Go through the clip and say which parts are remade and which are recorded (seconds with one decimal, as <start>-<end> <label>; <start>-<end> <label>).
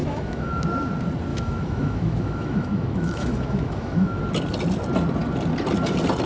0.0-0.6 remade; 0.6-1.3 recorded; 1.3-4.2 remade; 4.2-6.3 recorded